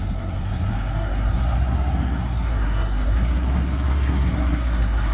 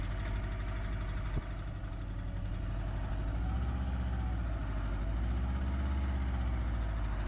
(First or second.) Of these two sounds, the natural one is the second